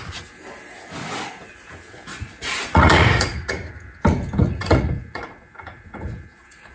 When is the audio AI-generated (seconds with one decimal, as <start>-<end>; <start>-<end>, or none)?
2.1-3.5; 4.4-6.7